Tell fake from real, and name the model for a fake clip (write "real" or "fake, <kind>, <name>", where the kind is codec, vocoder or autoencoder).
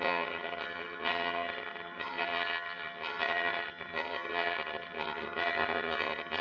fake, vocoder, HiFi-GAN